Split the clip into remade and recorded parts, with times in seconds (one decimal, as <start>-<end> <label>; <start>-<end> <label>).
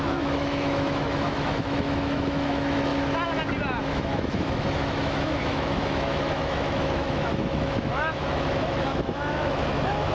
0.0-2.9 remade; 2.9-3.8 recorded; 3.8-10.1 remade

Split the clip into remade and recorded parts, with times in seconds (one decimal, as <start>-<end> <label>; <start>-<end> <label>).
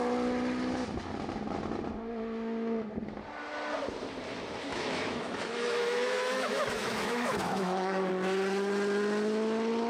0.0-4.7 recorded; 4.7-8.1 remade; 8.1-9.9 recorded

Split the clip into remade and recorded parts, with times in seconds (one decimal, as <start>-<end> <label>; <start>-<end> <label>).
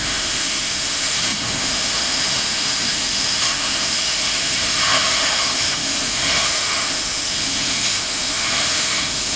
0.0-9.4 remade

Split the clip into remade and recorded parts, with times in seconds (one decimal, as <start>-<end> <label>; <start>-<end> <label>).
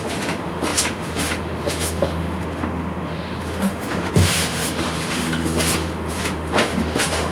0.0-7.3 remade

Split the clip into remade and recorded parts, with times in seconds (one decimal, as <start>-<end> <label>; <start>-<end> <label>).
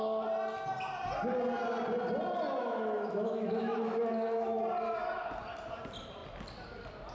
0.0-2.6 recorded; 2.6-4.6 remade; 4.6-7.1 recorded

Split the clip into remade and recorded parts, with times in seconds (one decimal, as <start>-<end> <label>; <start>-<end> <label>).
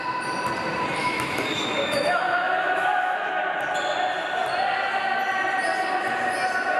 0.0-1.0 recorded; 1.0-3.4 remade; 3.4-6.8 recorded